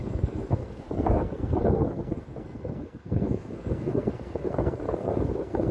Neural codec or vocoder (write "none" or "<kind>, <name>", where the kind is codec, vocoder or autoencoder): codec, SNAC